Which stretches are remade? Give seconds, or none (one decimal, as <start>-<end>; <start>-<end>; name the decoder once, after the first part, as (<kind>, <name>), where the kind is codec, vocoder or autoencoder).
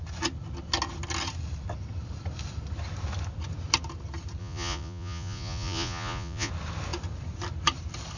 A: 4.4-6.5 (vocoder, Vocos)